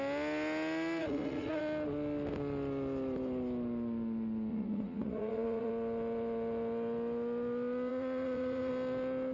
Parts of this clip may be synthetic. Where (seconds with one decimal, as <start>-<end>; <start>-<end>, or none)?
1.0-1.6; 4.5-5.7; 7.9-8.7